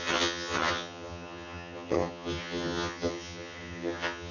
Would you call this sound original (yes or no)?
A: no